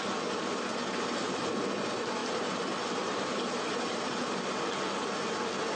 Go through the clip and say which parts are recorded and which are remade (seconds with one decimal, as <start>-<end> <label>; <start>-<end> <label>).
0.0-0.7 recorded; 0.7-1.5 remade; 1.5-2.2 recorded; 2.2-4.6 remade; 4.6-5.8 recorded